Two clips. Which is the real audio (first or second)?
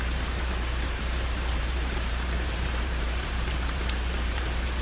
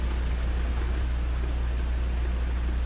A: second